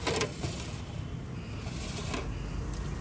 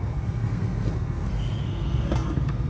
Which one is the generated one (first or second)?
second